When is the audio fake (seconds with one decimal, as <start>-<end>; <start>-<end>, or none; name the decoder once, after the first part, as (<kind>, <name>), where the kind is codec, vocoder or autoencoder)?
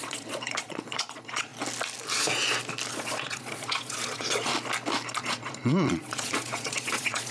0.0-1.5 (vocoder, Vocos); 2.9-4.5; 5.2-7.3